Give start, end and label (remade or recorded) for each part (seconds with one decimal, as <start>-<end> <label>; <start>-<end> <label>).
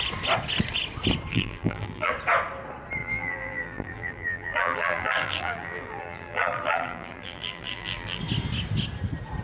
0.0-1.3 recorded; 1.3-2.1 remade; 2.1-3.0 recorded; 3.0-8.2 remade; 8.2-9.4 recorded